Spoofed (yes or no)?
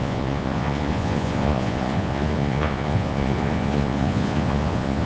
yes